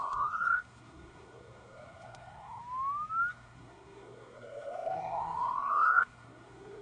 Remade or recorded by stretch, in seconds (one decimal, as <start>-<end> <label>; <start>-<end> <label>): 0.0-2.6 remade; 2.6-3.3 recorded; 3.3-6.8 remade